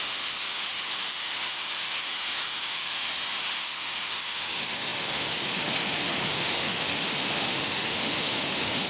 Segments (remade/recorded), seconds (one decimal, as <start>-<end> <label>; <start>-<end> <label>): 0.0-8.9 remade